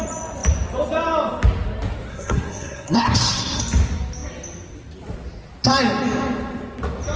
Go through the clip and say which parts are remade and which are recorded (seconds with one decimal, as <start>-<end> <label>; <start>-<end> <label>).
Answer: 0.0-2.1 recorded; 2.1-3.6 remade; 3.6-7.2 recorded